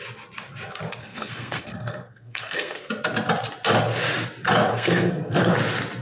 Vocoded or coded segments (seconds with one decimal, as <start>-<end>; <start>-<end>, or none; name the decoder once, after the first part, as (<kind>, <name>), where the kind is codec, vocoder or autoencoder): 1.0-2.9 (codec, SNAC); 4.7-5.5